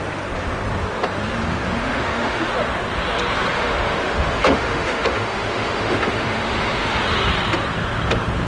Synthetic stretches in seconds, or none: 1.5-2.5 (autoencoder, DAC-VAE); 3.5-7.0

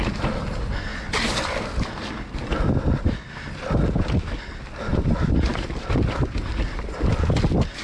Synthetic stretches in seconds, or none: none